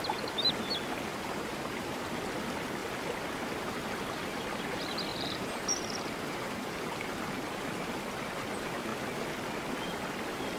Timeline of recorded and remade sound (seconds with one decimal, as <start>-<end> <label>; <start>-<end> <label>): 0.0-1.1 recorded; 1.1-2.0 remade; 2.0-5.1 recorded; 5.1-6.8 remade; 6.8-10.6 recorded